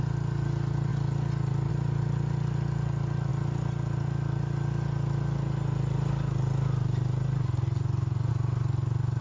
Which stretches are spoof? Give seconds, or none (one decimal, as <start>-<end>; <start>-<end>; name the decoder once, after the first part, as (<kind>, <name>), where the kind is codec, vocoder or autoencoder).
none

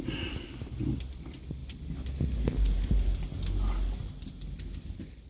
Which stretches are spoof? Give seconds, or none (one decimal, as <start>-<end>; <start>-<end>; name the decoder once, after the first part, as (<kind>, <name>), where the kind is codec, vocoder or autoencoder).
none

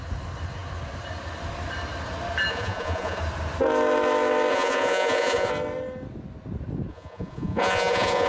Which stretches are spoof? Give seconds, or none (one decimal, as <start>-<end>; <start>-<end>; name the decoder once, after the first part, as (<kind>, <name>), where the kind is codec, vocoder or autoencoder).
2.5-3.2 (vocoder, Vocos); 4.5-5.5; 6.9-8.3

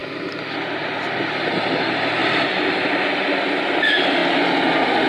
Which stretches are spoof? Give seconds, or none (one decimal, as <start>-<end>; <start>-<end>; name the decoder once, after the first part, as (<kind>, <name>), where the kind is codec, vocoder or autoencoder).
0.0-0.8 (vocoder, BigVGAN v2); 2.2-3.0

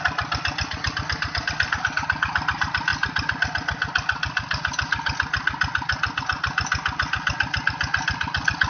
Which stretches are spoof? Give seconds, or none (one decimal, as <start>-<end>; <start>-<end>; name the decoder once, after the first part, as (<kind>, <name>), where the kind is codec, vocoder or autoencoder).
none